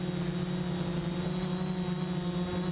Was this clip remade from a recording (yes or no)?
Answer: no